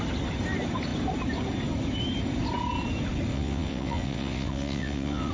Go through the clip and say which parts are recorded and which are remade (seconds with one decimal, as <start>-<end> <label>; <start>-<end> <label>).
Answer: 0.0-3.3 recorded; 3.3-5.3 remade